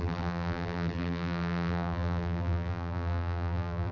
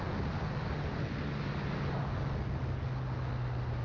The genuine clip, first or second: second